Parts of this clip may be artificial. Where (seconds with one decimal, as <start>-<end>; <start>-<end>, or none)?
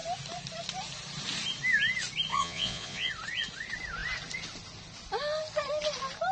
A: 2.3-3.1